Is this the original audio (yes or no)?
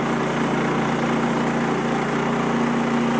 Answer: yes